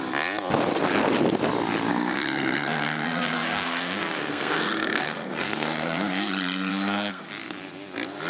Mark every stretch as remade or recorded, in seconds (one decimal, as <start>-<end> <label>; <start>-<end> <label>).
0.0-1.9 recorded; 1.9-6.3 remade; 6.3-6.7 recorded; 6.7-7.3 remade; 7.3-8.3 recorded